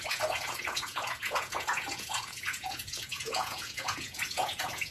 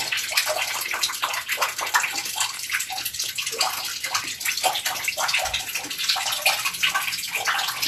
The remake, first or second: first